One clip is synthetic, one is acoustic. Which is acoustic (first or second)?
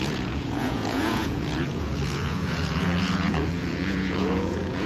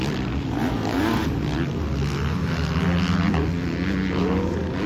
second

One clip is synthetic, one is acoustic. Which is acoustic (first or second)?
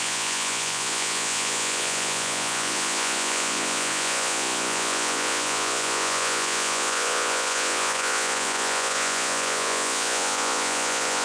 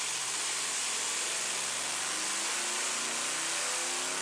second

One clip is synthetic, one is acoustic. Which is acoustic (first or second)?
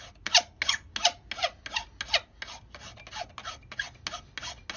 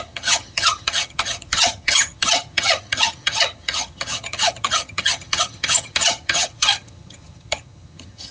first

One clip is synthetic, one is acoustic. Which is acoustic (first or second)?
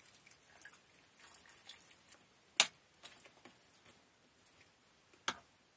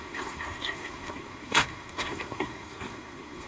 first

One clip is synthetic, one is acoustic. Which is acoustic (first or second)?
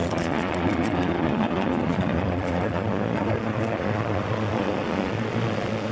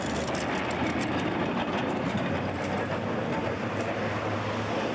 second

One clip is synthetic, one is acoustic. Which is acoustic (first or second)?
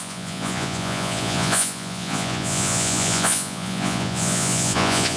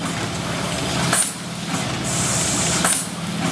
second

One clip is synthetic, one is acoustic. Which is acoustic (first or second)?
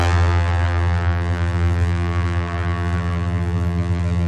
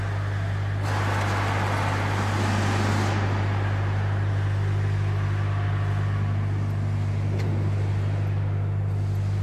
second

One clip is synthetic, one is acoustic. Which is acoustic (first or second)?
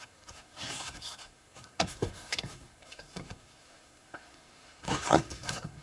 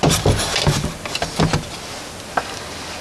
second